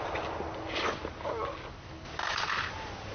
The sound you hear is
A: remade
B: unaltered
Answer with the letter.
B